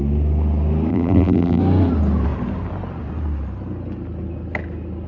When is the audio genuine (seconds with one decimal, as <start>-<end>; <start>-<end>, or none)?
0.0-0.9; 1.6-5.1

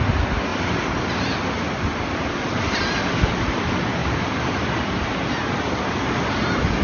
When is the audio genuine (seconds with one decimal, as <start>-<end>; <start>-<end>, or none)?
0.0-0.5; 2.8-4.0; 5.8-6.8

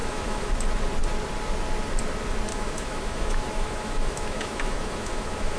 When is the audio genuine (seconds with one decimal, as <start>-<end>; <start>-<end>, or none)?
0.5-2.5

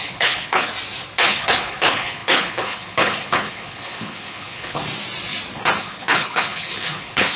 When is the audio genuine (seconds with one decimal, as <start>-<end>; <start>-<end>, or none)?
0.7-1.2; 4.8-5.8